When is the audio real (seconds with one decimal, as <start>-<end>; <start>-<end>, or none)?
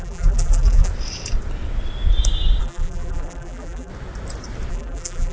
0.9-2.6; 3.9-4.7